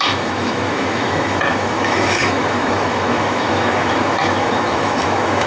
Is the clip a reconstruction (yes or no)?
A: yes